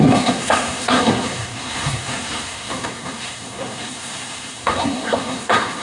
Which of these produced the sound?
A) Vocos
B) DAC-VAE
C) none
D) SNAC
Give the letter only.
D